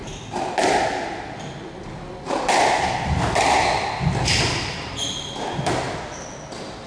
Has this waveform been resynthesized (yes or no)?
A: no